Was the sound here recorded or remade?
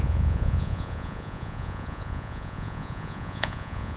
remade